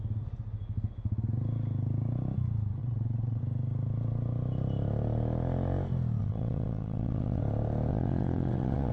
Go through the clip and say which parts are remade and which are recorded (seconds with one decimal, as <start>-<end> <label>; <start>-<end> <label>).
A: 0.0-2.8 recorded; 2.8-3.4 remade; 3.4-6.2 recorded; 6.2-7.4 remade; 7.4-7.9 recorded; 7.9-8.9 remade